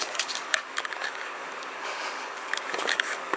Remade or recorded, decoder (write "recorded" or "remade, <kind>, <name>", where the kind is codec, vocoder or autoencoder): remade, codec, DAC